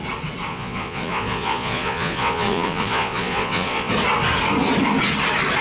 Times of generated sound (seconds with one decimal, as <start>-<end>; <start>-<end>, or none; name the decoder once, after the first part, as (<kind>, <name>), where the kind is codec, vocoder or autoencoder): 0.5-3.9 (vocoder, Vocos)